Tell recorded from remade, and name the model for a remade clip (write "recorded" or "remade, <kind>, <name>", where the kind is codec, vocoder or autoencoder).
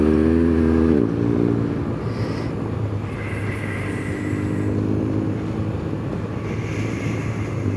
recorded